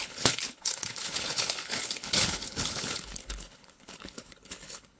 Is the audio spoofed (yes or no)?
yes